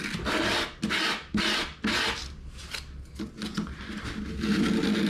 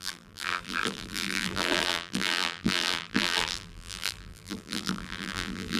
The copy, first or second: second